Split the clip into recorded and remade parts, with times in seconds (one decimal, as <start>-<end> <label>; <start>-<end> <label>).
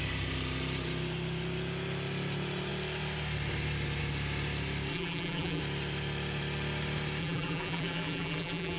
0.0-4.9 recorded; 4.9-5.6 remade; 5.6-7.2 recorded; 7.2-8.8 remade